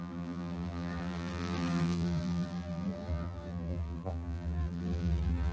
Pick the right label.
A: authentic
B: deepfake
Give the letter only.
B